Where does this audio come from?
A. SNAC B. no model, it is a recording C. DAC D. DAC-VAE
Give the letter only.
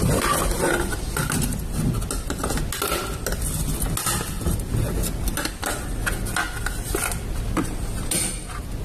B